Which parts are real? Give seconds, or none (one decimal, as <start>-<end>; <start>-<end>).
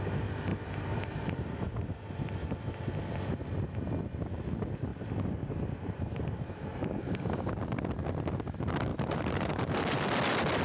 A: 0.0-0.5; 2.3-4.9; 7.0-8.9; 10.1-10.6